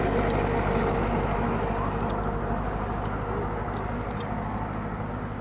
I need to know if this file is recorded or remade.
recorded